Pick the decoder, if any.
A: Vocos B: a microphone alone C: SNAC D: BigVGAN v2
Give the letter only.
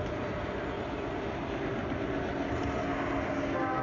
B